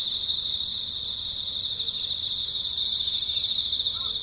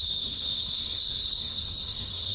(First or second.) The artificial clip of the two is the second